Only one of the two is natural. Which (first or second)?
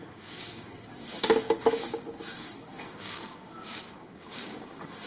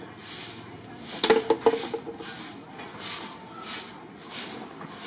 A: second